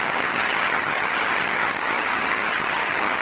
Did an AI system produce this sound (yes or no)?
yes